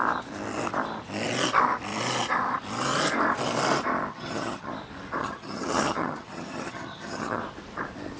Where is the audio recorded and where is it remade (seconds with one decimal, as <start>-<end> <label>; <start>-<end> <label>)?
0.0-4.1 recorded; 4.1-4.7 remade; 4.7-5.2 recorded; 5.2-7.4 remade; 7.4-8.2 recorded